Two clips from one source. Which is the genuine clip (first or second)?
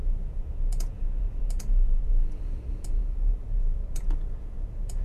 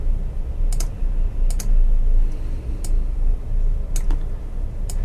second